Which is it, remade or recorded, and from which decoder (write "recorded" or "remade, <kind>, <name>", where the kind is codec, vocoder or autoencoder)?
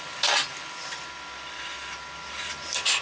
recorded